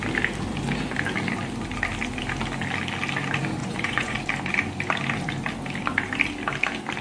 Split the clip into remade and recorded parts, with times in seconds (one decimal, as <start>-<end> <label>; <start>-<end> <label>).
0.0-3.6 recorded; 3.6-4.2 remade; 4.2-7.0 recorded